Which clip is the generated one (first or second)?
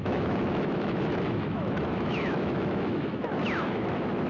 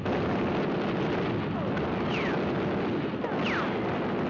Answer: first